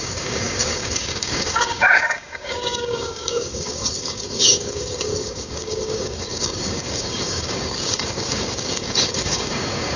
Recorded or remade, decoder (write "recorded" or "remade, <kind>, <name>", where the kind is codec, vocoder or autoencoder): remade, codec, DAC